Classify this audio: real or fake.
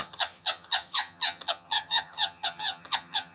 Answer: fake